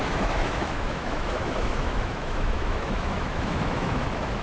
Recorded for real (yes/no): no